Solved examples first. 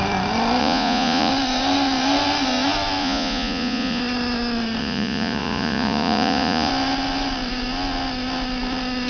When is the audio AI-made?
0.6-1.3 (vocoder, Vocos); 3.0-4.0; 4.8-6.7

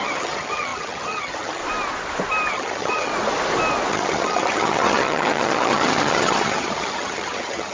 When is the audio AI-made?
0.0-1.6 (vocoder, HiFi-GAN); 2.5-3.1; 3.9-7.7